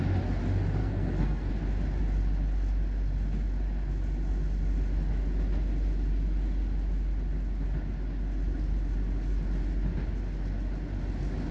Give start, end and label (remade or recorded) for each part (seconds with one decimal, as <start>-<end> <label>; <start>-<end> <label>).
0.0-0.8 recorded; 0.8-1.5 remade; 1.5-11.5 recorded